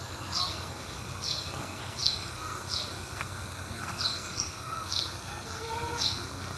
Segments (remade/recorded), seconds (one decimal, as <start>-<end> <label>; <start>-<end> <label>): 0.0-6.6 remade